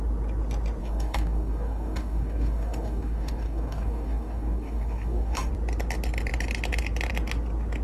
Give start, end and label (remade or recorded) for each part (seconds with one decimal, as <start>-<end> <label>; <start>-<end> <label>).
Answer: 0.0-0.8 recorded; 0.8-5.5 remade; 5.5-7.8 recorded